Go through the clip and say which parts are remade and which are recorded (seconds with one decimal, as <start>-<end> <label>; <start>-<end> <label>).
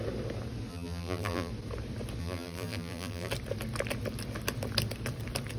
0.0-0.7 recorded; 0.7-1.5 remade; 1.5-2.2 recorded; 2.2-3.3 remade; 3.3-5.6 recorded